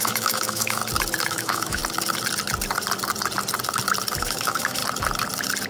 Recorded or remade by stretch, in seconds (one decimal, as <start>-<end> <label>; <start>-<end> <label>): 0.0-0.8 remade; 0.8-1.3 recorded; 1.3-1.8 remade; 1.8-4.2 recorded; 4.2-4.8 remade; 4.8-5.7 recorded